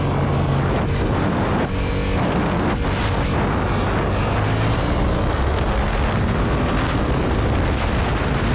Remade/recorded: recorded